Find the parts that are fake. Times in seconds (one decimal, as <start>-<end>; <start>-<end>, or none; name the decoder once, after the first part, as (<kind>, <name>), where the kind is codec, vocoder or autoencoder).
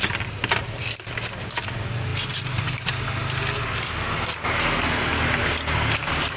none